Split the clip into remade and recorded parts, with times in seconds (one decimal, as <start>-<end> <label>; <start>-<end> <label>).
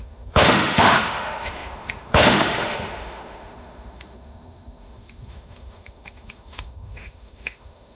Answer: 0.0-8.0 remade